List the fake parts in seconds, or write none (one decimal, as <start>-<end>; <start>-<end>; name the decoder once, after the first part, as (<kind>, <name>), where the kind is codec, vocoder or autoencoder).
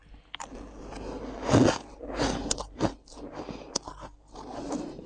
none